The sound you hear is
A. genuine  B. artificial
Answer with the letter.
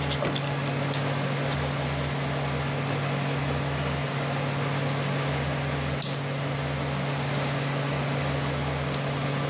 A